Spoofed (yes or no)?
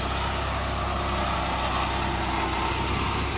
no